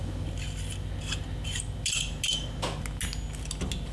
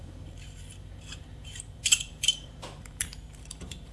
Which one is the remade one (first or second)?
second